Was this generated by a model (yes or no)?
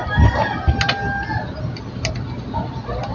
no